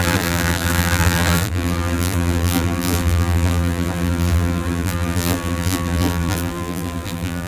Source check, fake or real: fake